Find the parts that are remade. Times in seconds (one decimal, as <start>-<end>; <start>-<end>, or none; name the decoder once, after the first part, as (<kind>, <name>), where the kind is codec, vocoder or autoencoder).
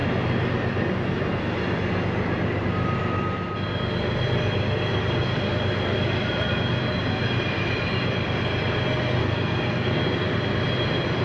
9.2-10.0 (codec, SNAC)